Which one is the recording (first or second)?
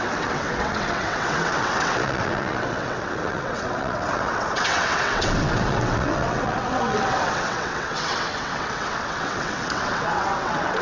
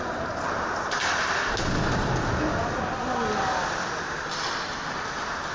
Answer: second